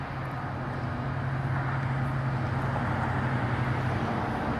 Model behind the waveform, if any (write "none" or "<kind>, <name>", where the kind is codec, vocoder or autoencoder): none